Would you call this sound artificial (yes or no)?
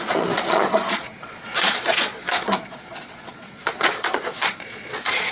yes